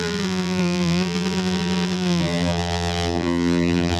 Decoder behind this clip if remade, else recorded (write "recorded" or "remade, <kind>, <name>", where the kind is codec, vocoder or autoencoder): remade, vocoder, BigVGAN v2